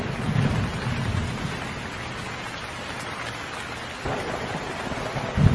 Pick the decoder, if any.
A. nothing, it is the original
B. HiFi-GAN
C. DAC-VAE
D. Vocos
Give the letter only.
A